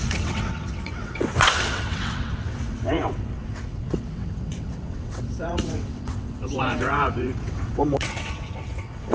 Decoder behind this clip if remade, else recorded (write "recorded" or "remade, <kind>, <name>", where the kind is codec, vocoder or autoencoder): remade, vocoder, WaveNeXt